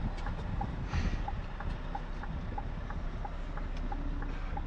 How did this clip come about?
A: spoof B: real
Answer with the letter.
B